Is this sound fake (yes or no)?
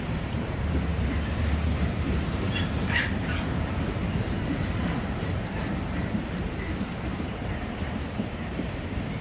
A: yes